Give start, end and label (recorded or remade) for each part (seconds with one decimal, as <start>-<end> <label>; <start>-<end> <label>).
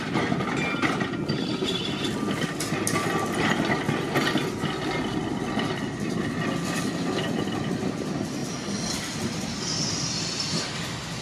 0.0-11.2 recorded